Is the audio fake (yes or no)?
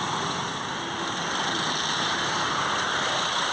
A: no